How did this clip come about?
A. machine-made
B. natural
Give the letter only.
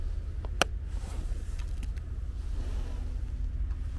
B